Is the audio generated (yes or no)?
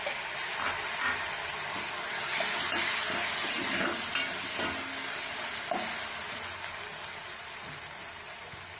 no